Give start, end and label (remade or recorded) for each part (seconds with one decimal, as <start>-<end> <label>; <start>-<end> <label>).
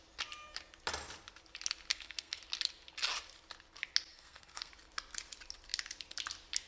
0.0-1.9 recorded; 1.9-2.4 remade; 2.4-4.1 recorded; 4.1-4.7 remade; 4.7-6.7 recorded